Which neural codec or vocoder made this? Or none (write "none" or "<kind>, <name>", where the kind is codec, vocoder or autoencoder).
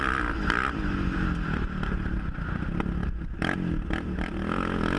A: none